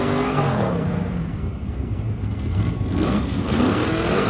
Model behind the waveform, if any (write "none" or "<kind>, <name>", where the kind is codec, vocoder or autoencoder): codec, SNAC